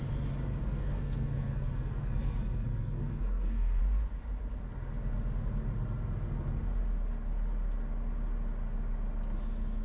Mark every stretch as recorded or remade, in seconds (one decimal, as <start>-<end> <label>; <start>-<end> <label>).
0.0-0.5 recorded; 0.5-3.8 remade; 3.8-9.8 recorded